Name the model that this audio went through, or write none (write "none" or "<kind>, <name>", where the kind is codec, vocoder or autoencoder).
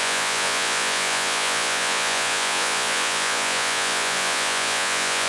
vocoder, Vocos